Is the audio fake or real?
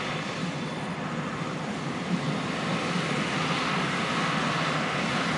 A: real